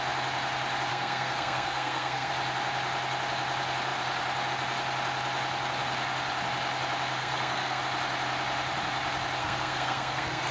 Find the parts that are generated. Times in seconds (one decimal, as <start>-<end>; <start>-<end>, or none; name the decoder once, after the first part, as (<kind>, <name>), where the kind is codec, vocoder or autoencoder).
0.9-2.3 (codec, SNAC); 7.2-7.8; 9.4-10.5